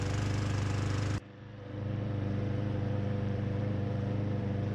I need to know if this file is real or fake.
fake